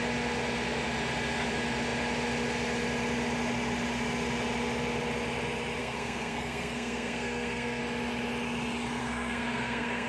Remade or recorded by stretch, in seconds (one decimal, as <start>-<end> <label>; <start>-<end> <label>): 0.0-5.8 recorded; 5.8-7.8 remade; 7.8-9.0 recorded; 9.0-10.1 remade